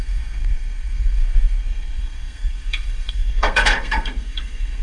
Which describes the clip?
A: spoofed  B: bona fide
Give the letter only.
A